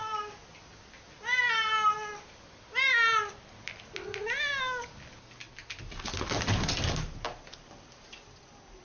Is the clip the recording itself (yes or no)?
yes